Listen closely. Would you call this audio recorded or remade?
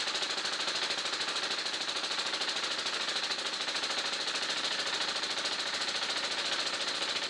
recorded